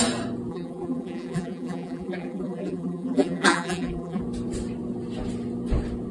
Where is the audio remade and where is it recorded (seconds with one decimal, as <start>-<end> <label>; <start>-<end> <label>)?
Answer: 0.0-0.5 recorded; 0.5-4.2 remade; 4.2-6.1 recorded